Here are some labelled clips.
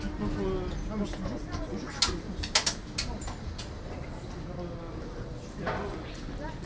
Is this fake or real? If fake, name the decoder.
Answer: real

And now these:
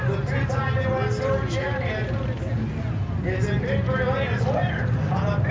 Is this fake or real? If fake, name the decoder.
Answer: real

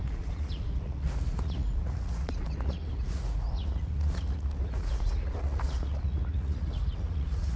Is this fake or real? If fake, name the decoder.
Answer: fake, vocoder, Vocos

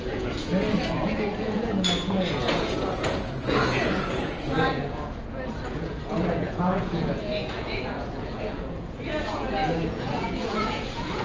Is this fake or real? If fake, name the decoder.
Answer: fake, vocoder, Vocos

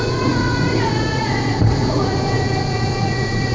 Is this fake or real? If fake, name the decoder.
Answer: fake, vocoder, Vocos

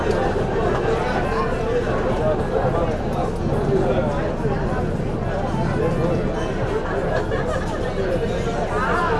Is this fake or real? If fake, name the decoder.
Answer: real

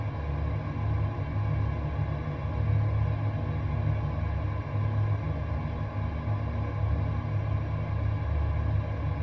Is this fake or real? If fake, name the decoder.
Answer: real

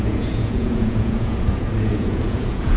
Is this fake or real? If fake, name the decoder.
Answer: fake, vocoder, Vocos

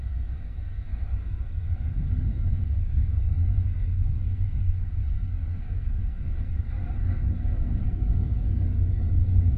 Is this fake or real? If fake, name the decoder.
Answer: fake, codec, SNAC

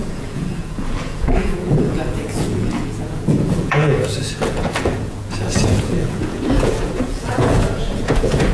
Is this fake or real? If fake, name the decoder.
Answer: fake, vocoder, Vocos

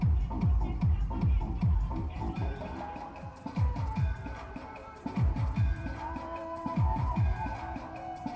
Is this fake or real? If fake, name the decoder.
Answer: fake, vocoder, BigVGAN v2